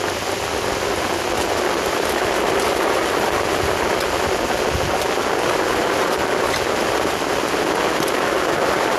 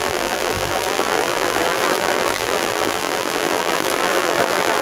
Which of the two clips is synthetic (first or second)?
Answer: second